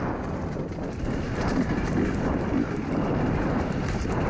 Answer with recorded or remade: recorded